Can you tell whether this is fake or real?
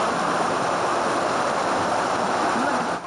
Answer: real